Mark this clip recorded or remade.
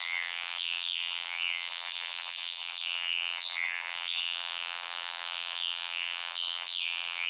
remade